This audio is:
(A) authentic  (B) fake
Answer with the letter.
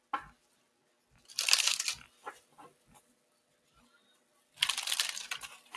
A